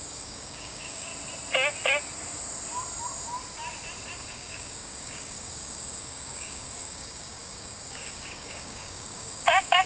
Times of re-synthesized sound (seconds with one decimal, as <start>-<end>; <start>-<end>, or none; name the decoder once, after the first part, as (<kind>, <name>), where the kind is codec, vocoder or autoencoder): 0.0-1.1 (codec, DAC); 4.3-9.9